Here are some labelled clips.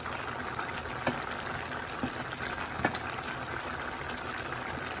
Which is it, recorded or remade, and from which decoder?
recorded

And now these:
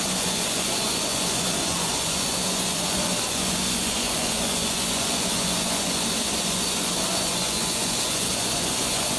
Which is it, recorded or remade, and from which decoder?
remade, vocoder, Vocos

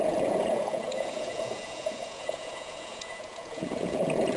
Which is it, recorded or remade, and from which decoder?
remade, vocoder, Vocos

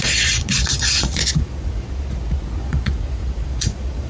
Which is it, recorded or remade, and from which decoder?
remade, vocoder, Vocos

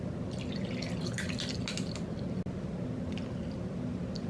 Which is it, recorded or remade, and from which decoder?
recorded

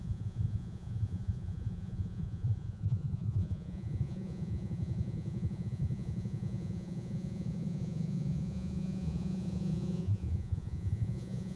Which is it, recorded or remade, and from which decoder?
remade, vocoder, Vocos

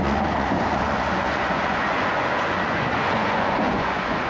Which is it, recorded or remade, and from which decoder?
remade, vocoder, Vocos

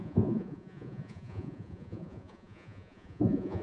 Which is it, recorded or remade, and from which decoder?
remade, vocoder, Vocos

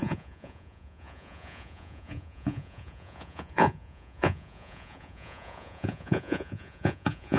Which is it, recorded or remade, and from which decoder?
remade, vocoder, Vocos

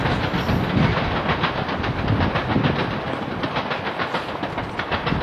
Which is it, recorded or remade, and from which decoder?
recorded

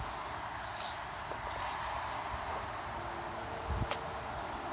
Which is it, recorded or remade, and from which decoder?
recorded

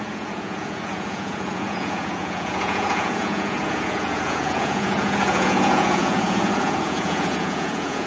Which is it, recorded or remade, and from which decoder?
remade, vocoder, Vocos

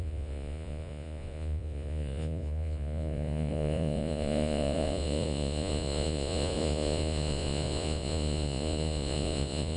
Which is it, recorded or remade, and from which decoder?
remade, vocoder, Vocos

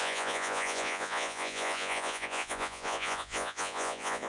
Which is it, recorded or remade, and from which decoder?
remade, vocoder, Vocos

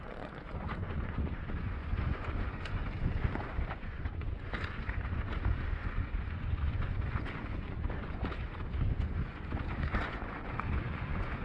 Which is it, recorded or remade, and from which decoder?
remade, vocoder, Vocos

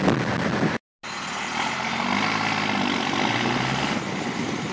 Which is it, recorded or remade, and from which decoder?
recorded